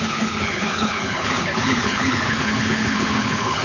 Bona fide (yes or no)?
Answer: no